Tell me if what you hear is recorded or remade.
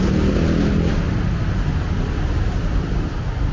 recorded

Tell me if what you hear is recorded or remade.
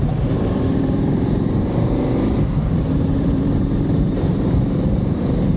remade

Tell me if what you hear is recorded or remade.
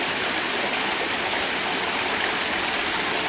recorded